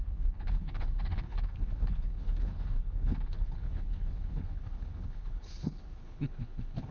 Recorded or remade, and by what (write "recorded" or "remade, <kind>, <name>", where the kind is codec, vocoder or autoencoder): remade, codec, HILCodec